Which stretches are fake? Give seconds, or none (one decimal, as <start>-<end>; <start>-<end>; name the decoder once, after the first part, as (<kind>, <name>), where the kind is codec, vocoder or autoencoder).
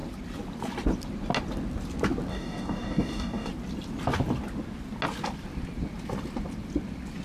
2.3-3.5 (codec, DAC)